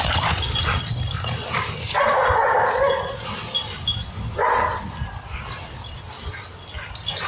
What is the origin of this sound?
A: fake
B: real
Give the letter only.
B